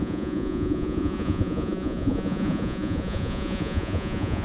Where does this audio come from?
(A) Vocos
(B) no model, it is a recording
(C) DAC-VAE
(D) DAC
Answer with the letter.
A